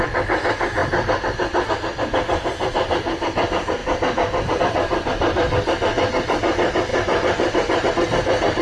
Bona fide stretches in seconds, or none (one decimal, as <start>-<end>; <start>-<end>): 3.8-4.6